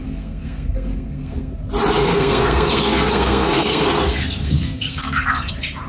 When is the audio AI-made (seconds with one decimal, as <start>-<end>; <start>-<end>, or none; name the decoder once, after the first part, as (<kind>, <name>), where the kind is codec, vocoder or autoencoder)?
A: 0.0-1.5 (codec, SNAC); 2.0-5.5